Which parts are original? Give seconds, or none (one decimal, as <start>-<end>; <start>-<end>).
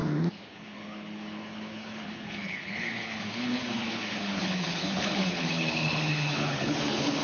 none